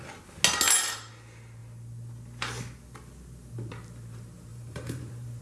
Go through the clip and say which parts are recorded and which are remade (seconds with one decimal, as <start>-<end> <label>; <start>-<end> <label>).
0.0-4.5 recorded; 4.5-5.4 remade